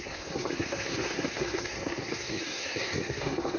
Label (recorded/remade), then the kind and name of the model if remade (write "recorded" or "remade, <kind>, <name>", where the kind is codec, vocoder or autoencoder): remade, codec, SNAC